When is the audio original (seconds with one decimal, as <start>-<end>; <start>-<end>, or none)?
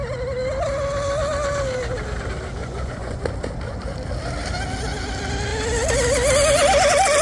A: 0.0-2.6; 3.2-7.2